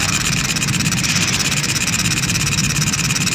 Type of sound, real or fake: real